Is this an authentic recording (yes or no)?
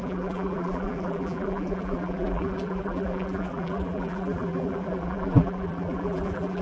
no